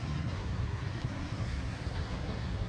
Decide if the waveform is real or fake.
fake